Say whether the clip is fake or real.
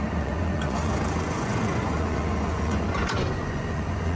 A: fake